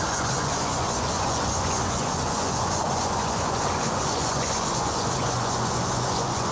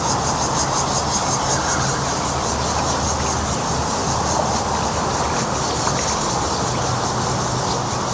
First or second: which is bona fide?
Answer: second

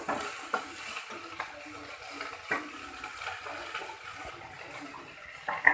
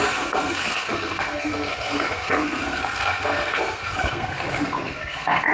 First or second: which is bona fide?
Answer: first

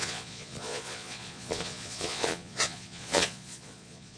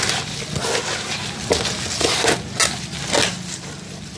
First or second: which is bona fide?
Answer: second